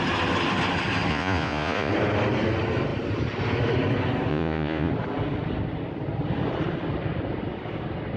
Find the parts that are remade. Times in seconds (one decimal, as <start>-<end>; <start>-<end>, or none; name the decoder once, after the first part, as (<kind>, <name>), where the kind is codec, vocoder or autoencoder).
1.1-1.9 (vocoder, Vocos); 4.3-4.9